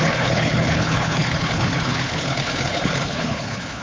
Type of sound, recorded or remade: remade